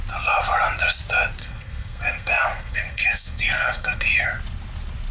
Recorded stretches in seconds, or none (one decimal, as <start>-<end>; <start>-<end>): 0.0-1.4; 4.0-5.1